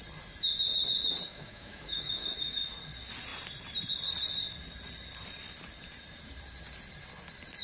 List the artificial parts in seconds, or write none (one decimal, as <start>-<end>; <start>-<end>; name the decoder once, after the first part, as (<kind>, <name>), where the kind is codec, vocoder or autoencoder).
1.3-2.7 (autoencoder, DAC-VAE)